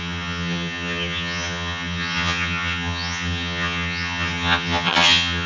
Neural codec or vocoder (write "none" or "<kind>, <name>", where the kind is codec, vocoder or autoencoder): vocoder, HiFi-GAN